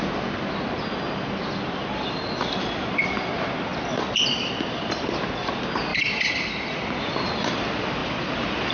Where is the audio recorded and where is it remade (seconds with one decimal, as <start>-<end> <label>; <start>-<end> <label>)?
0.0-5.9 recorded; 5.9-6.5 remade; 6.5-8.0 recorded; 8.0-8.7 remade